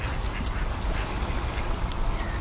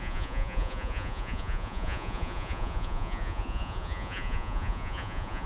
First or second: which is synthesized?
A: second